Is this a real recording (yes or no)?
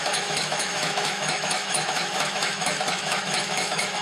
no